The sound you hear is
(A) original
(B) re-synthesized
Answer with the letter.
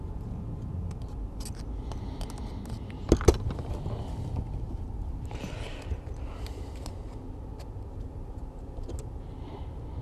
A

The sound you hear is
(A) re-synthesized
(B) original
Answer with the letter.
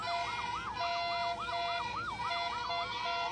B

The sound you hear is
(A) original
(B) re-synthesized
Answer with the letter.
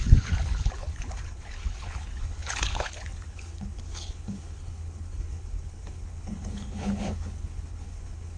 B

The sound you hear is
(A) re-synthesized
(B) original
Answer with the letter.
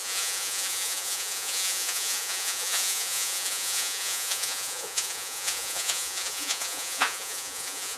A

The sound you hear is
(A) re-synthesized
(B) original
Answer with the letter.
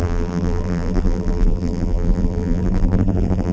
A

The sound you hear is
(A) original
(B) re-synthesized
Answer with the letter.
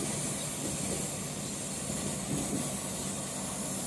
A